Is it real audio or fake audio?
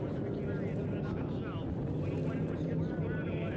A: real